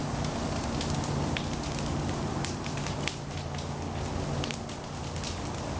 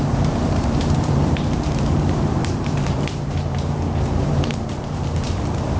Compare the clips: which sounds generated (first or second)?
second